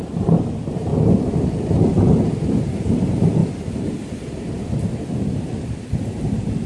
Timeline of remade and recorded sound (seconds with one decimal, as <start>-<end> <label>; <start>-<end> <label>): 0.0-0.9 remade; 0.9-2.9 recorded; 2.9-6.7 remade